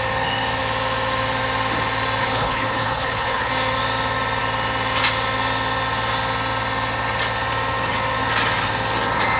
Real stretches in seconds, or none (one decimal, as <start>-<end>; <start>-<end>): 0.0-2.2; 3.5-9.4